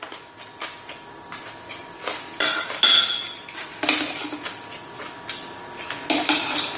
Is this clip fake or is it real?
real